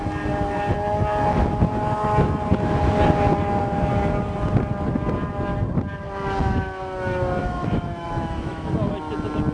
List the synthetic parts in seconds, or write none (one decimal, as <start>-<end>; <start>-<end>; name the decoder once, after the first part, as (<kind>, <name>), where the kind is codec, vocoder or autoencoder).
7.4-8.7 (autoencoder, DAC-VAE)